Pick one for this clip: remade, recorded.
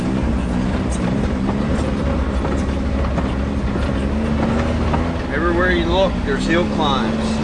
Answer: recorded